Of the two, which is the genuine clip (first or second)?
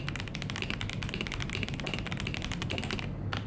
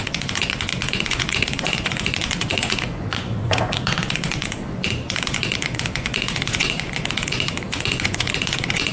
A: first